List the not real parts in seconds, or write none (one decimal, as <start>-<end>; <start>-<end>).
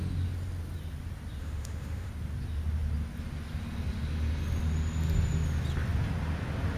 1.4-2.1